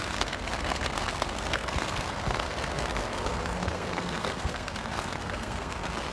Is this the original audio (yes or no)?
no